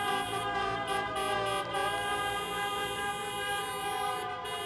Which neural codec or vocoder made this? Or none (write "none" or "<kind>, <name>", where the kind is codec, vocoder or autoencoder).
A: none